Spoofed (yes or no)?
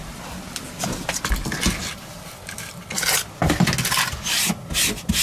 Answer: no